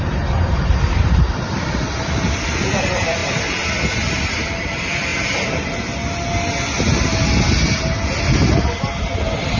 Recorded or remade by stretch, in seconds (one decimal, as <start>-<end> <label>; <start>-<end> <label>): 0.0-3.2 remade; 3.2-4.1 recorded; 4.1-5.1 remade; 5.1-9.0 recorded; 9.0-9.6 remade